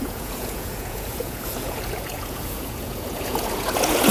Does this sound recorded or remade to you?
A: remade